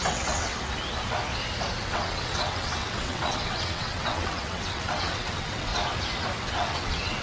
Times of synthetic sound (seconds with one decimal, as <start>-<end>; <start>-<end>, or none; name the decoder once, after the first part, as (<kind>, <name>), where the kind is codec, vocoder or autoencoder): 0.0-0.5 (vocoder, WaveNeXt); 1.8-5.7; 6.4-7.2